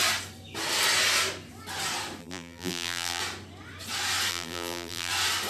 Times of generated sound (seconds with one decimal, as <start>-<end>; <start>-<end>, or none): 2.2-3.2; 4.3-5.1